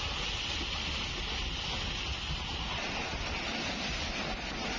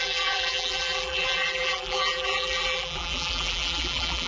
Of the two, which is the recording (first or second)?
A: first